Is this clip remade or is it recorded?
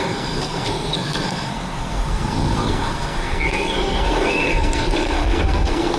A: remade